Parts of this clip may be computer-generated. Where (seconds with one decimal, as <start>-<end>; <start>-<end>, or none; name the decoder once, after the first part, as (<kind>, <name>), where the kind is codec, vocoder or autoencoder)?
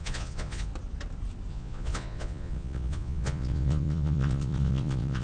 0.0-0.7 (vocoder, Vocos); 1.5-5.2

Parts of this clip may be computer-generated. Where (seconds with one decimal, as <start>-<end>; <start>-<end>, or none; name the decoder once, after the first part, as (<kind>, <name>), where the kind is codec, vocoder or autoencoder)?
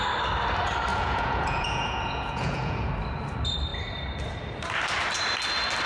0.9-2.9 (vocoder, Vocos)